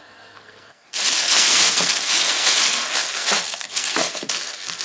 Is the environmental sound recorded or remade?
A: remade